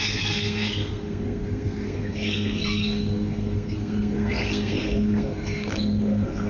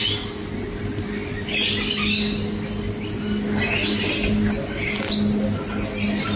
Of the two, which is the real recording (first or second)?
second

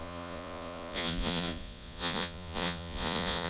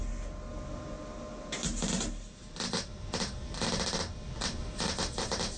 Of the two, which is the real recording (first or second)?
second